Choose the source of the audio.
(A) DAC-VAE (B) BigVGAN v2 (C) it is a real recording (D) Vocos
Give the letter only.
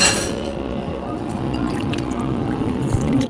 D